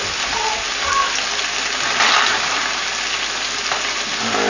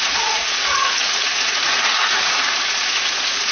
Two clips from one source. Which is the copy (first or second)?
second